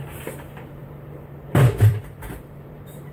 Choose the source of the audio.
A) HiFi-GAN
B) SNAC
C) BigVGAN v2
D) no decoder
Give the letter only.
C